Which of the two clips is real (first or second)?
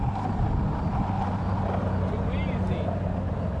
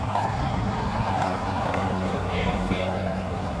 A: first